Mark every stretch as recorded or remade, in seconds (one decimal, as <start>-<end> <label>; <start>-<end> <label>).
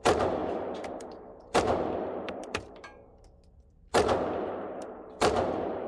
0.0-3.1 remade; 3.1-4.2 recorded; 4.2-5.9 remade